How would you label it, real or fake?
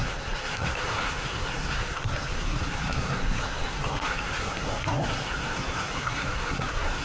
fake